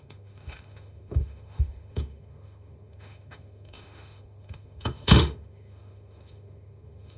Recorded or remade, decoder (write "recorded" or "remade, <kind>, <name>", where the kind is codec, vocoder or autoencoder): remade, autoencoder, DAC-VAE